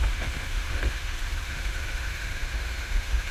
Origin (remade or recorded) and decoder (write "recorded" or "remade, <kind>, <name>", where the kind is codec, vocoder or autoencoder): remade, autoencoder, DAC-VAE